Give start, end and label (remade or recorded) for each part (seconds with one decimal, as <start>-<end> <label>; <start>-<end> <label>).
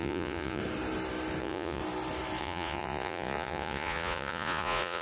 0.0-0.6 remade; 0.6-1.4 recorded; 1.4-1.8 remade; 1.8-2.4 recorded; 2.4-5.0 remade